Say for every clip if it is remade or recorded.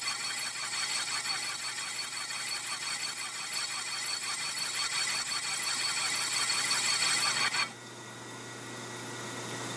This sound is recorded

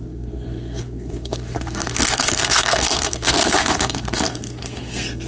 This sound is remade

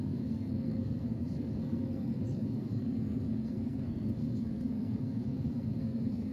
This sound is remade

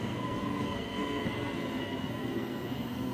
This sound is remade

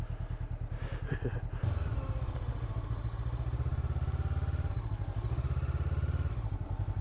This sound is recorded